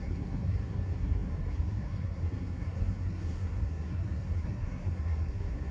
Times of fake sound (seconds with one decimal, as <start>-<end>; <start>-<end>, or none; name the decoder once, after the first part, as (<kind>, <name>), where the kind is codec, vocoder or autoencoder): 0.0-5.7 (codec, SNAC)